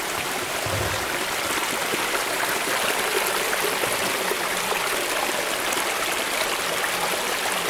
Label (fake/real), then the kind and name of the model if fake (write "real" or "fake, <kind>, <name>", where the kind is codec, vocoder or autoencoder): real